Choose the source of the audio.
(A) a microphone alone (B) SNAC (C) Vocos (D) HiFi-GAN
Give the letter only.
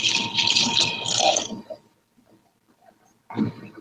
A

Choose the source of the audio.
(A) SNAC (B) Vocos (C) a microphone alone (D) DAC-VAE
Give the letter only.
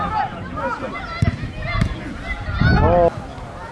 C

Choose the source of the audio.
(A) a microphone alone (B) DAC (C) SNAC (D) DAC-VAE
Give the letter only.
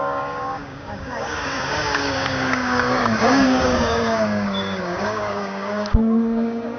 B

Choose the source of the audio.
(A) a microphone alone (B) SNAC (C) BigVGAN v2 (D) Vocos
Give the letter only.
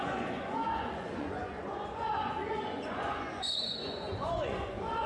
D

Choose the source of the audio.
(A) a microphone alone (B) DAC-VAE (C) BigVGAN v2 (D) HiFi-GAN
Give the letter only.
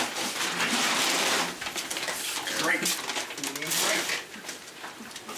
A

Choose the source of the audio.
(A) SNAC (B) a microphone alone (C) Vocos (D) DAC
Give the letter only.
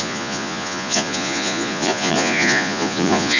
C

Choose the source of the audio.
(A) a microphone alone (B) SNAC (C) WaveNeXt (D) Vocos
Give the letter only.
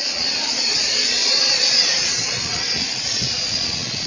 D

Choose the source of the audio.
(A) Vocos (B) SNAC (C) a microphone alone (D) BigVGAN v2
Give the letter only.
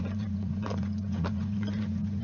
A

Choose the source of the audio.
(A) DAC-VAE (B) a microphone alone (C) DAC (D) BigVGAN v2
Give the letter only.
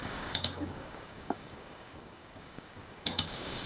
C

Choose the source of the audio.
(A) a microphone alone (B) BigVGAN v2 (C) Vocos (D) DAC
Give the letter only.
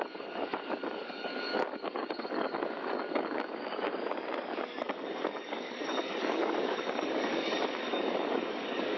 D